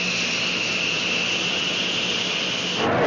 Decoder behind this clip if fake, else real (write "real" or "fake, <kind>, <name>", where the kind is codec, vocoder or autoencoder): real